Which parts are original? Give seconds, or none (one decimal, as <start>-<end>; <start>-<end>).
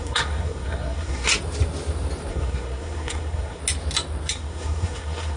1.3-2.3; 3.6-4.3